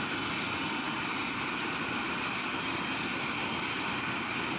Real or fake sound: real